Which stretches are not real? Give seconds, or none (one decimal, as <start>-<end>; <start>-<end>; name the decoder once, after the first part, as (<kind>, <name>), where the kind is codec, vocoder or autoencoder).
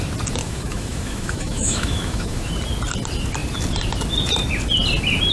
0.4-2.5 (autoencoder, DAC-VAE)